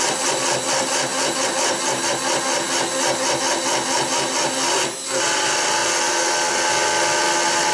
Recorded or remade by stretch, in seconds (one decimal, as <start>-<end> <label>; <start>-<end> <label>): 0.0-7.7 recorded